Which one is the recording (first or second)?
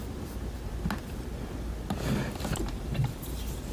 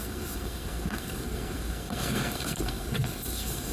first